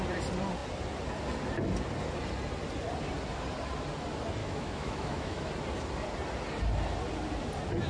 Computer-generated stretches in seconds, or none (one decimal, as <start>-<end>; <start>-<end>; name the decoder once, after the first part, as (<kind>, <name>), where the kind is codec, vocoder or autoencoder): 4.4-5.5 (autoencoder, DAC-VAE)